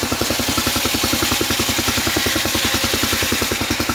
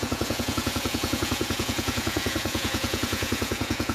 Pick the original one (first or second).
first